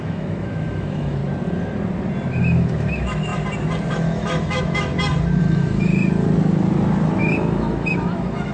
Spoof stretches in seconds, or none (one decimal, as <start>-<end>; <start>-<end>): 0.0-1.2; 2.4-3.3; 3.9-4.9; 5.4-5.9; 7.2-8.5